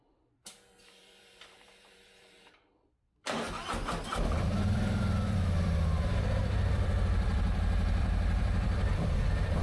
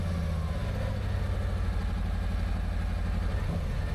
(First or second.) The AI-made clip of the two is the first